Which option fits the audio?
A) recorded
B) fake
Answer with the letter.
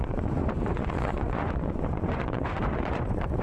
B